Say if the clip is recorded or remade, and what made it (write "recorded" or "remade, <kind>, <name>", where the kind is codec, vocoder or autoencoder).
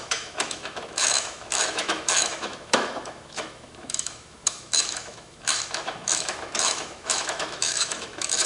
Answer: remade, autoencoder, DAC-VAE